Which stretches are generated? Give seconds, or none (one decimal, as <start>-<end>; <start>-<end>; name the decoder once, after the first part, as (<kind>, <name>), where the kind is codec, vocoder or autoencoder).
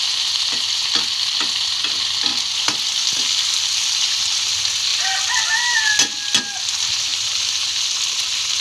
none